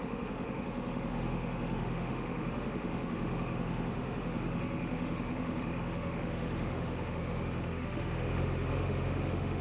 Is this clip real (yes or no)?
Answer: no